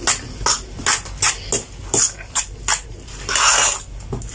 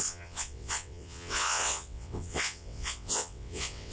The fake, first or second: second